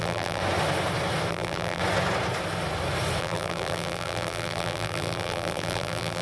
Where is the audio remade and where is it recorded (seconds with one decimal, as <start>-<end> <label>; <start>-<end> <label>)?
0.0-0.4 remade; 0.4-1.3 recorded; 1.3-1.8 remade; 1.8-3.2 recorded; 3.2-6.2 remade